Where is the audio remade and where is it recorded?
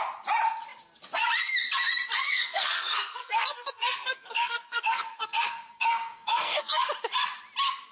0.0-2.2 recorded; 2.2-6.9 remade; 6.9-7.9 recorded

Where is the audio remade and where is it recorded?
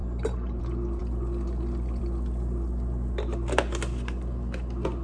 0.0-0.6 remade; 0.6-5.0 recorded